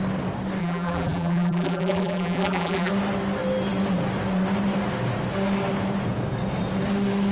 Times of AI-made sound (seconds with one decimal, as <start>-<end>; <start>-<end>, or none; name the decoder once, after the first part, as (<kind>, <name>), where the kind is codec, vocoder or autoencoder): 0.6-2.9 (vocoder, BigVGAN v2)